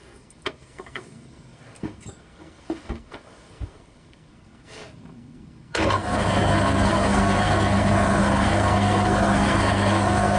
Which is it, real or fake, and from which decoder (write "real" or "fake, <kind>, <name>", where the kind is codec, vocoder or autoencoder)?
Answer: fake, codec, SNAC